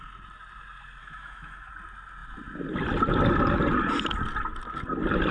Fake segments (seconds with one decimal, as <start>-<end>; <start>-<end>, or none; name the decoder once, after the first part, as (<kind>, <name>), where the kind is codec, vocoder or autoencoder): 1.0-1.7 (autoencoder, DAC-VAE)

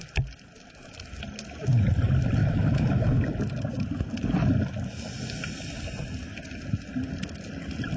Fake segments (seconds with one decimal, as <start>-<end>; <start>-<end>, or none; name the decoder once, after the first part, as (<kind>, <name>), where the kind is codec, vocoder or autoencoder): 2.4-3.2 (autoencoder, DAC-VAE)

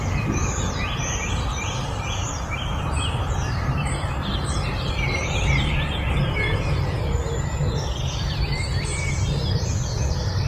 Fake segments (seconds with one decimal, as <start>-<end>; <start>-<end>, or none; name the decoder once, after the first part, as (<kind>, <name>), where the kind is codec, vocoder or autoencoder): 0.0-0.4 (vocoder, BigVGAN v2); 1.3-10.5

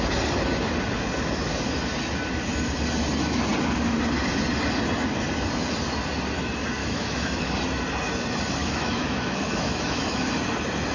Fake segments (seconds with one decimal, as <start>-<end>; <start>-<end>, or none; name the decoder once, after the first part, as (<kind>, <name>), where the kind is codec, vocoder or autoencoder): 6.8-7.5 (autoencoder, DAC-VAE); 8.6-10.3

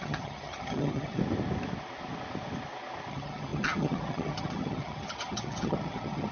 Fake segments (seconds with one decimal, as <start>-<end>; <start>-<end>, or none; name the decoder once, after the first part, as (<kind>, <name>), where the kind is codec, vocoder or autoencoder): 0.0-1.2 (vocoder, HiFi-GAN); 3.1-6.3

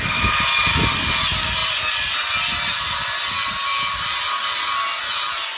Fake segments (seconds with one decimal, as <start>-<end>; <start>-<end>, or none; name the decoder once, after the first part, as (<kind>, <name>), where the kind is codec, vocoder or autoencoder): none

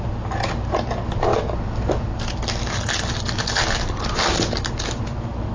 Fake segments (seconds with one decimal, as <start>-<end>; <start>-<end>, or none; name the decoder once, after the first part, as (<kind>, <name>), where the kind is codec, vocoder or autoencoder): none